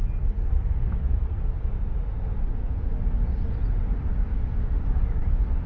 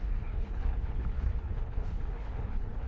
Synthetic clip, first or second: second